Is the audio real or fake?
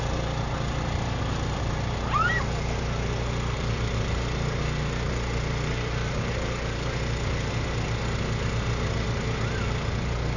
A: real